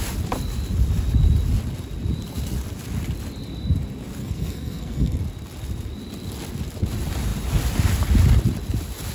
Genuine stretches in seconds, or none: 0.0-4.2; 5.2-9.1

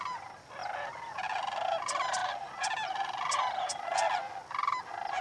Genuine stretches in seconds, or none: 0.0-5.2

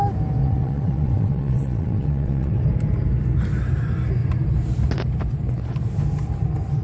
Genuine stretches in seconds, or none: 0.0-0.4; 2.6-6.8

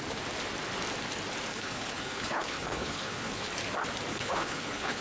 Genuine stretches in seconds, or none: 0.0-1.5; 3.5-4.1